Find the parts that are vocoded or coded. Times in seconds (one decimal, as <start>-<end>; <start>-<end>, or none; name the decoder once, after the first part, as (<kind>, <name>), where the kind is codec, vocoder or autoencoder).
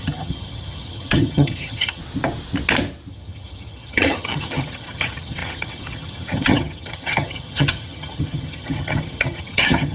0.0-2.0 (vocoder, HiFi-GAN); 3.1-9.9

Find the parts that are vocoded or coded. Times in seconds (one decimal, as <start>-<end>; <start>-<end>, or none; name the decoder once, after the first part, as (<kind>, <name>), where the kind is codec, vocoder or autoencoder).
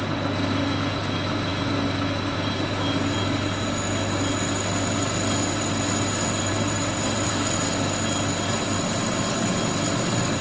6.5-7.3 (vocoder, BigVGAN v2)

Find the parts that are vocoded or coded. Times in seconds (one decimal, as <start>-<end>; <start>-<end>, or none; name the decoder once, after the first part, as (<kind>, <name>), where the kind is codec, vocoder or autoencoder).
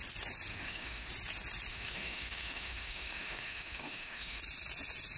0.5-1.1 (autoencoder, DAC-VAE); 1.7-4.4